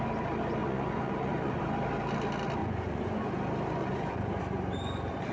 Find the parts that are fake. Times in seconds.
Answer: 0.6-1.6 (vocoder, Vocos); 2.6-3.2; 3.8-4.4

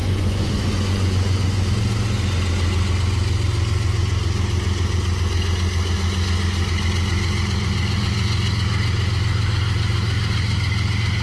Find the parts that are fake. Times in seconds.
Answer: 0.0-1.7 (vocoder, Vocos)

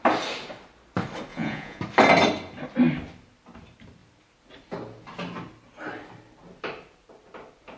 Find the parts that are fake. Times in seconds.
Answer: 1.3-1.8 (vocoder, Vocos)

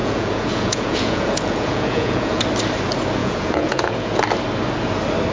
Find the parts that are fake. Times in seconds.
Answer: 0.0-2.4 (vocoder, Vocos); 3.2-4.2

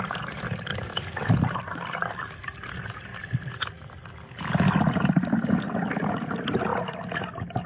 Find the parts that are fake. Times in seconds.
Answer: none

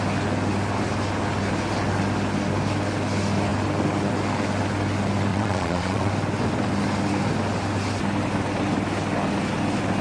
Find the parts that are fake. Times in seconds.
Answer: 5.3-6.1 (vocoder, Vocos)

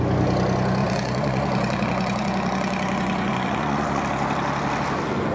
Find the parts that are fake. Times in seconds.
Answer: 0.8-4.0 (vocoder, Vocos)

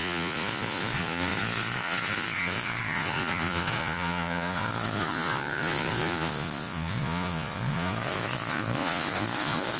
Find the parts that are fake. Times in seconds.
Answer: 0.0-9.8 (vocoder, Vocos)